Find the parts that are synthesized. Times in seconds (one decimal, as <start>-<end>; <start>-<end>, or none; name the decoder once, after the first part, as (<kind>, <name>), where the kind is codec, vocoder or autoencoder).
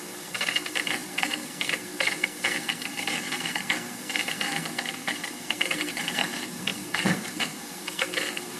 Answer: 0.0-8.6 (codec, SNAC)